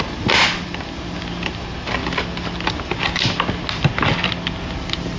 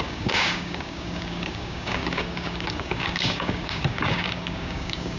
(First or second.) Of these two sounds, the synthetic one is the second